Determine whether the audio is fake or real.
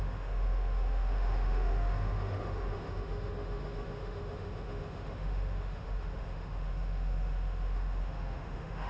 fake